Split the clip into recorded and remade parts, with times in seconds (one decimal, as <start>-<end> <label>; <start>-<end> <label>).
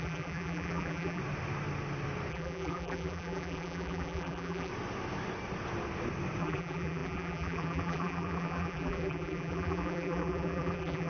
0.0-1.2 remade; 1.2-2.3 recorded; 2.3-4.7 remade; 4.7-6.4 recorded; 6.4-11.1 remade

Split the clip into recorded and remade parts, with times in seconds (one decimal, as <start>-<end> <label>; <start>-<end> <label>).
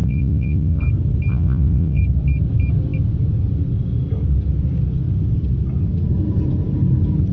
0.0-0.8 remade; 0.8-1.3 recorded; 1.3-2.0 remade; 2.0-7.3 recorded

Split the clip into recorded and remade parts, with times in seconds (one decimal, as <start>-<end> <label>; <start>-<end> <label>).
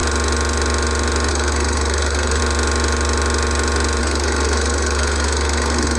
0.0-1.3 recorded; 1.3-2.4 remade; 2.4-4.0 recorded; 4.0-6.0 remade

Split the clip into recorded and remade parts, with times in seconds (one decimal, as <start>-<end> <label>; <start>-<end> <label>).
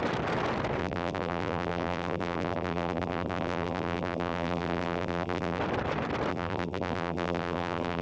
0.0-0.8 recorded; 0.8-5.6 remade; 5.6-6.3 recorded; 6.3-8.0 remade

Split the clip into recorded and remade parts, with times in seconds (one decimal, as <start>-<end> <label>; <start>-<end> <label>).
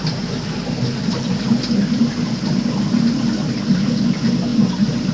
0.0-5.1 recorded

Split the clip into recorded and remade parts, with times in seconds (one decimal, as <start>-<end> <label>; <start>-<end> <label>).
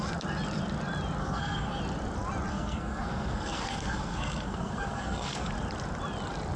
0.0-1.2 recorded; 1.2-1.8 remade; 1.8-2.5 recorded; 2.5-5.5 remade; 5.5-6.6 recorded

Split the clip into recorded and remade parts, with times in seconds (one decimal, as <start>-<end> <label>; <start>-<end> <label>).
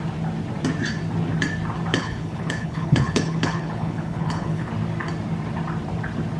0.0-1.9 recorded; 1.9-4.7 remade; 4.7-6.4 recorded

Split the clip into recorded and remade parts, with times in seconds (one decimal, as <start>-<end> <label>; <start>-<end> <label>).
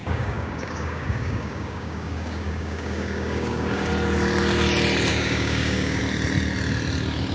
0.0-3.9 remade; 3.9-5.1 recorded; 5.1-6.0 remade; 6.0-7.3 recorded